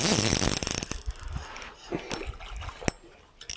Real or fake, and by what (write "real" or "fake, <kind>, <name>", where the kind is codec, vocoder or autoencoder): real